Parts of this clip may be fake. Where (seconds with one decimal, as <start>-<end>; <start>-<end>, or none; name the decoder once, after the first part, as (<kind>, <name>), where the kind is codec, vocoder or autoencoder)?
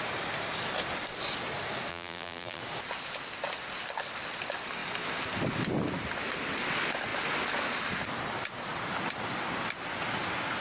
1.9-2.6 (vocoder, BigVGAN v2)